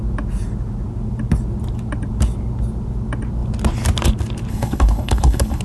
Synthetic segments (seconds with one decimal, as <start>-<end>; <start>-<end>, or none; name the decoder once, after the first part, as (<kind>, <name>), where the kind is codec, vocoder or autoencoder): 4.5-5.6 (codec, HILCodec)